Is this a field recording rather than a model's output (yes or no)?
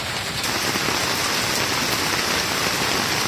yes